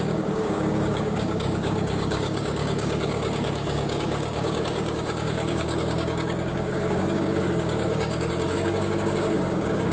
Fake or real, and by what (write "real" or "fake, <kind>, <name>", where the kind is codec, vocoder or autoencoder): fake, codec, DAC